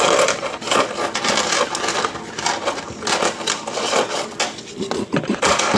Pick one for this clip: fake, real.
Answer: real